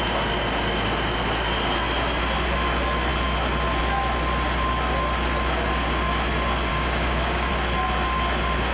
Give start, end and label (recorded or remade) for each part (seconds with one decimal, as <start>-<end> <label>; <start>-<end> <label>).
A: 0.0-6.7 recorded; 6.7-7.5 remade; 7.5-8.7 recorded